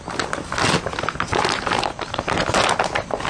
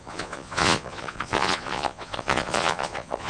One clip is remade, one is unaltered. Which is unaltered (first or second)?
first